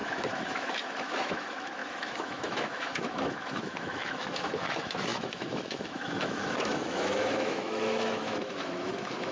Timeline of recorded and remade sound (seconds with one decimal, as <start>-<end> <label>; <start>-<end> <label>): 0.0-9.3 remade